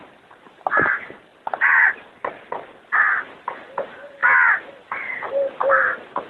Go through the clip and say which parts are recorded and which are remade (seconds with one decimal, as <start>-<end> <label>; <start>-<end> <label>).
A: 0.0-1.3 remade; 1.3-3.8 recorded; 3.8-4.2 remade; 4.2-5.6 recorded; 5.6-6.3 remade